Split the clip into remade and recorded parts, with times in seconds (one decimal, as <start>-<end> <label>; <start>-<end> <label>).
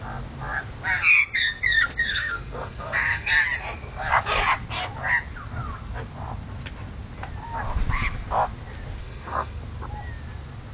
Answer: 0.0-2.1 recorded; 2.1-3.3 remade; 3.3-9.0 recorded; 9.0-9.6 remade; 9.6-10.7 recorded